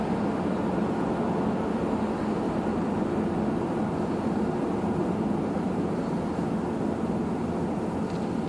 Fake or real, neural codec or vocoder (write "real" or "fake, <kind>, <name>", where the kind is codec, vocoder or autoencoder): real